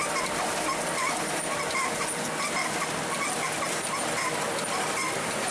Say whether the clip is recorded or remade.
recorded